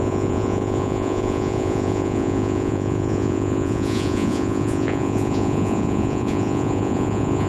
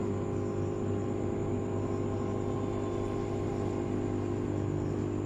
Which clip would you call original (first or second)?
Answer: second